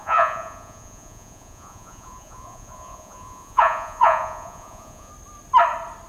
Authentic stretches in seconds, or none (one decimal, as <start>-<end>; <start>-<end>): 5.1-6.1